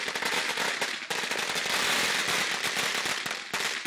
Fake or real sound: real